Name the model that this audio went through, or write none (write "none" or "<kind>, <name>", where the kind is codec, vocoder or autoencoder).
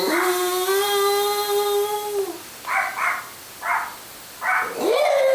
none